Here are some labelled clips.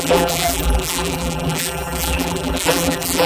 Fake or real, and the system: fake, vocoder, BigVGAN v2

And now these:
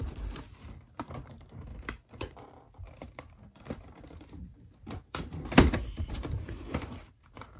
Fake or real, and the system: fake, vocoder, BigVGAN v2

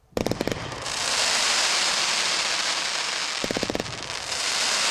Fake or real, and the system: fake, vocoder, BigVGAN v2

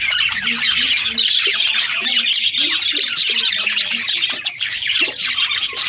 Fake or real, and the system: fake, vocoder, BigVGAN v2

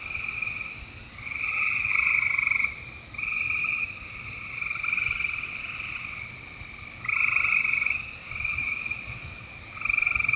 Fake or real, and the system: real